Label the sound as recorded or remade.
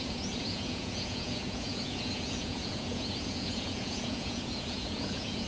remade